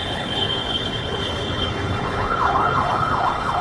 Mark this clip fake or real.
fake